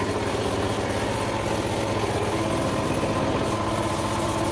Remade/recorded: recorded